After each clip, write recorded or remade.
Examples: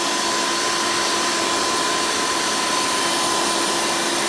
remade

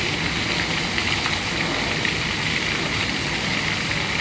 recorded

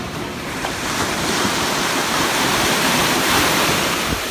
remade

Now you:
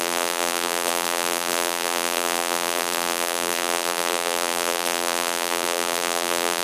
remade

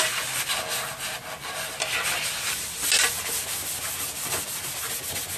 recorded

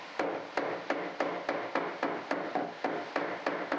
recorded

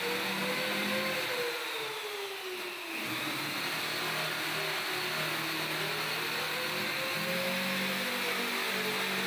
recorded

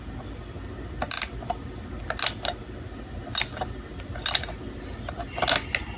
recorded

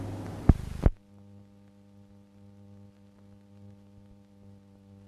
recorded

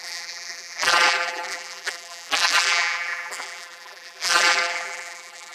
remade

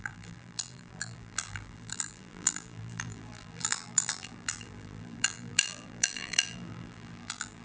remade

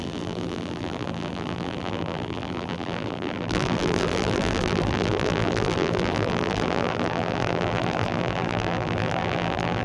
remade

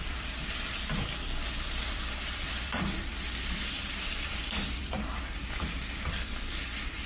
remade